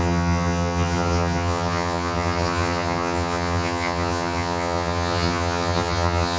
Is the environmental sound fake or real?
fake